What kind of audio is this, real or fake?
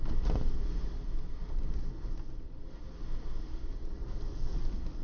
real